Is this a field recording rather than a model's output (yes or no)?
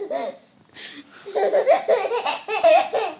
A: yes